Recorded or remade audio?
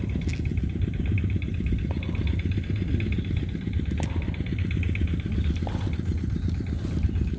recorded